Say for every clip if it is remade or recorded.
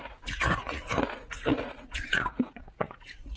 remade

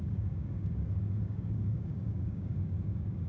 remade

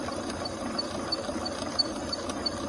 recorded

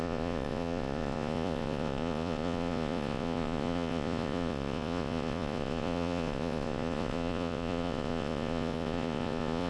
remade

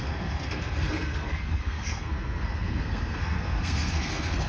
remade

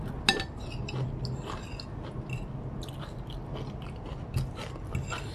recorded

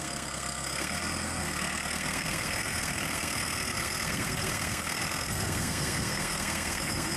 remade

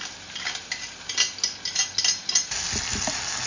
recorded